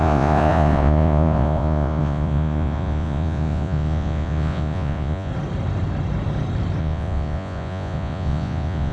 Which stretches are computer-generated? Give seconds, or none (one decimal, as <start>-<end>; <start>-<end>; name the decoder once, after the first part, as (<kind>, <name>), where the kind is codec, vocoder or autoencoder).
0.0-5.3 (vocoder, Vocos); 6.8-8.9